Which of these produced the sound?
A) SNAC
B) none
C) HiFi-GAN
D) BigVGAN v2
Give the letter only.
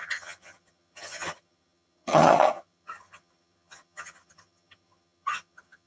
C